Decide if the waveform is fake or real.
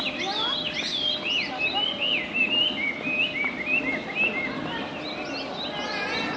real